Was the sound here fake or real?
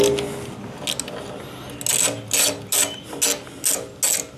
real